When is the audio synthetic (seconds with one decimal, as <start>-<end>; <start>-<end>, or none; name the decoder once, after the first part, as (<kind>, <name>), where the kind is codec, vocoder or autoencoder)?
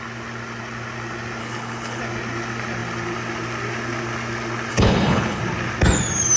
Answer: 1.4-2.0 (codec, HILCodec); 4.7-5.4